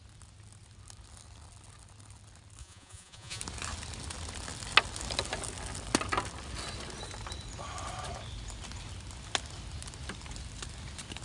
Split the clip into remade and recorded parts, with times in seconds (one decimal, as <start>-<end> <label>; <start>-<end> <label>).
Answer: 0.0-2.6 recorded; 2.6-3.4 remade; 3.4-11.2 recorded